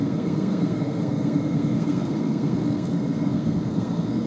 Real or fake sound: fake